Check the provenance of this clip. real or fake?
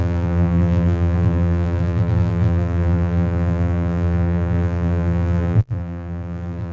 fake